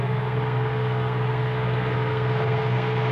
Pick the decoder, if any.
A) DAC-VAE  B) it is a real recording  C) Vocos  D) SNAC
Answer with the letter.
D